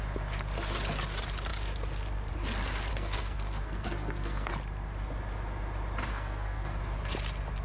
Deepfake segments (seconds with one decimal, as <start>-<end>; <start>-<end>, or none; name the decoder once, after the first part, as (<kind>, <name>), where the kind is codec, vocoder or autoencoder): 2.9-4.5 (codec, SNAC); 6.1-6.8